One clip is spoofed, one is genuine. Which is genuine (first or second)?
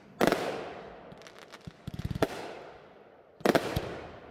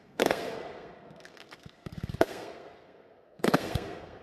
first